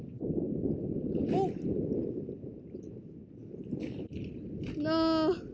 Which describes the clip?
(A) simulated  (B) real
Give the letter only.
B